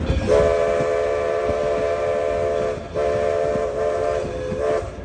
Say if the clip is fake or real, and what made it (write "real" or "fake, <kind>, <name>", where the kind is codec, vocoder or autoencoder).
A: real